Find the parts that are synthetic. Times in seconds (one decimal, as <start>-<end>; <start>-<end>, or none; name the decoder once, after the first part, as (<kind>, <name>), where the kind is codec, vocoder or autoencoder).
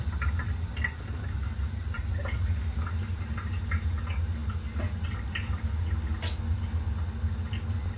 none